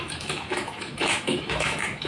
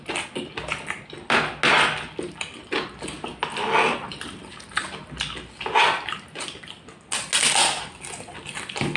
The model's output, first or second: first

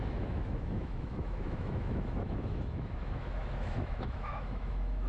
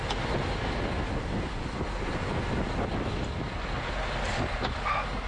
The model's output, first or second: first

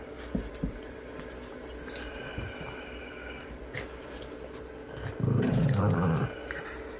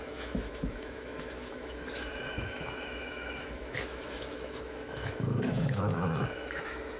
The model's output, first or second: second